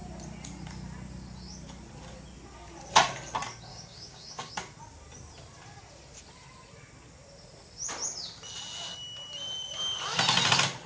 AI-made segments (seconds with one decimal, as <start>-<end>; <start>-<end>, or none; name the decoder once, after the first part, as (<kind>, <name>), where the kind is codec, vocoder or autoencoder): 3.7-4.5 (codec, DAC)